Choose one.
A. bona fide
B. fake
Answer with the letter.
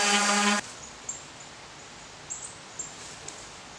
A